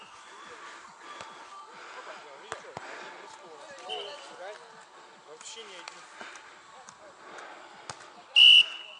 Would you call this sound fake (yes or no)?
no